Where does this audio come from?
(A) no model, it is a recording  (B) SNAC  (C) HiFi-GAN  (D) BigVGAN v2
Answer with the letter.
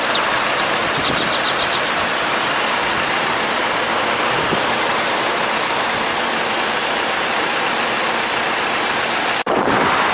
D